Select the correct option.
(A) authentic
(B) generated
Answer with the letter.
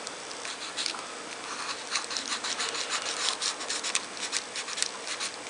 A